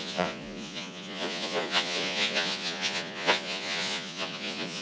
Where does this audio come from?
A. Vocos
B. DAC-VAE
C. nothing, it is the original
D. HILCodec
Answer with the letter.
A